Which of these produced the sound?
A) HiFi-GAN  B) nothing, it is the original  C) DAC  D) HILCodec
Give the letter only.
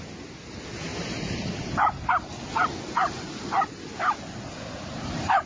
B